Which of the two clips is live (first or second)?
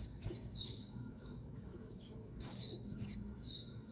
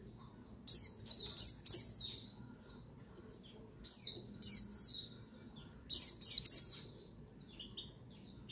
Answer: second